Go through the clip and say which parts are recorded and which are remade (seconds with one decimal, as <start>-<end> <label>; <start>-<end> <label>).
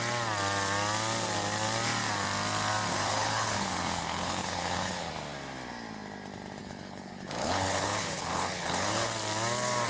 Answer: 0.0-2.9 recorded; 2.9-5.1 remade; 5.1-6.6 recorded; 6.6-9.1 remade; 9.1-9.9 recorded